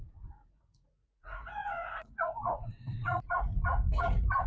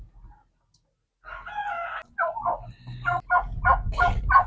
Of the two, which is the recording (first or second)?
second